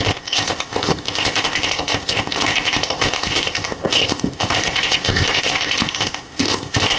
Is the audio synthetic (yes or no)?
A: yes